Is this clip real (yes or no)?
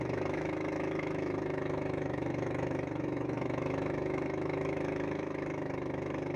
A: no